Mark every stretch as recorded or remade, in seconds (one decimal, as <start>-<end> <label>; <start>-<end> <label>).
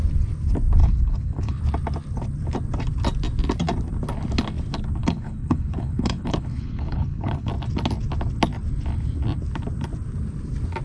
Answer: 0.0-0.8 recorded; 0.8-1.6 remade; 1.6-5.0 recorded; 5.0-7.5 remade; 7.5-10.8 recorded